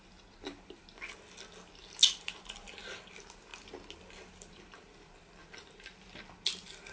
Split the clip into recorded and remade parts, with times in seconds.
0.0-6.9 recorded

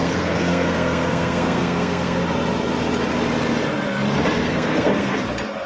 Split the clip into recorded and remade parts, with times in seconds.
0.0-2.2 remade; 2.2-4.4 recorded; 4.4-5.2 remade; 5.2-5.7 recorded

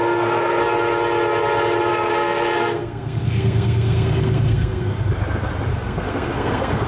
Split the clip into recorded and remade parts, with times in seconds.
0.0-0.6 remade; 0.6-1.9 recorded; 1.9-5.1 remade; 5.1-5.7 recorded; 5.7-6.9 remade

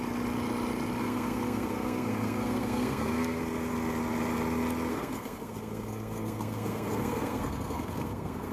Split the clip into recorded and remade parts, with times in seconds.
0.0-1.0 recorded; 1.0-3.4 remade; 3.4-4.9 recorded; 4.9-8.5 remade

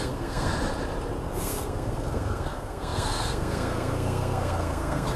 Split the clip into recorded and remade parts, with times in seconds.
0.0-0.5 remade; 0.5-1.2 recorded; 1.2-5.2 remade

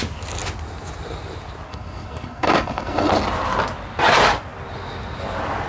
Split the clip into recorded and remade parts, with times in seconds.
0.0-1.7 recorded; 1.7-3.1 remade; 3.1-5.7 recorded

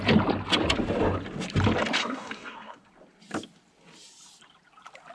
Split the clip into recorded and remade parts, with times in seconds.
0.0-2.0 recorded; 2.0-2.9 remade; 2.9-5.1 recorded